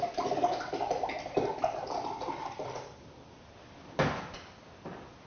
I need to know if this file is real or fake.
real